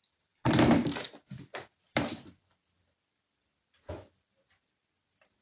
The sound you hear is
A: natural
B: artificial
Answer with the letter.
A